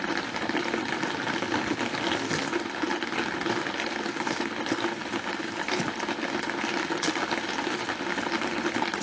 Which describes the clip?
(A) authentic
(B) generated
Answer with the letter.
A